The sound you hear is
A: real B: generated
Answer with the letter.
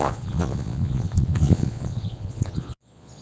B